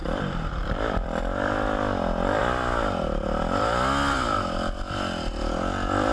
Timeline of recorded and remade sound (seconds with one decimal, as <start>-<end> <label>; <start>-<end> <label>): 0.0-6.1 remade